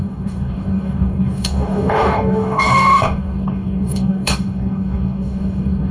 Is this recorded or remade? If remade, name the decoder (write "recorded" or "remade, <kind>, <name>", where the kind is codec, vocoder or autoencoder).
remade, codec, DAC